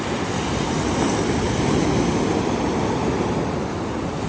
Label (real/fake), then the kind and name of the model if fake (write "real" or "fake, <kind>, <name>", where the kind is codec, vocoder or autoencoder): real